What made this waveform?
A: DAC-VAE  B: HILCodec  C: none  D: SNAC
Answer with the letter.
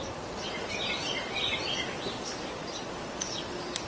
C